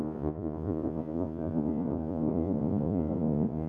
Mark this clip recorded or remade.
remade